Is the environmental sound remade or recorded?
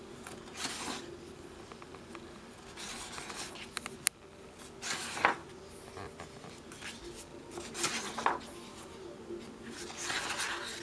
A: recorded